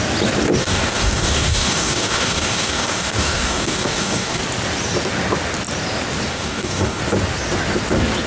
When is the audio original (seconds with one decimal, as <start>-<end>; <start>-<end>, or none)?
0.0-0.6; 4.4-6.3; 7.0-8.3